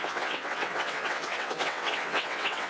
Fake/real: fake